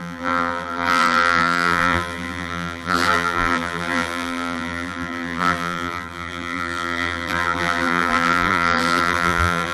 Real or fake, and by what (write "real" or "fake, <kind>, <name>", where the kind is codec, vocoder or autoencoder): fake, vocoder, BigVGAN v2